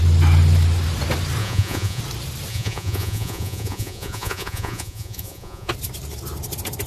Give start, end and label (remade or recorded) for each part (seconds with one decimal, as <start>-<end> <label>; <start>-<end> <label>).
0.0-1.4 recorded; 1.4-2.0 remade; 2.0-2.5 recorded; 2.5-5.7 remade; 5.7-6.9 recorded